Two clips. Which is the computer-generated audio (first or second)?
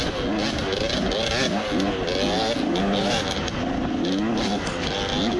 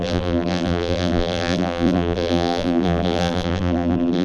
second